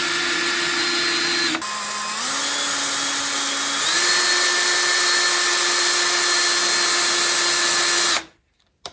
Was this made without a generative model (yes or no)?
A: yes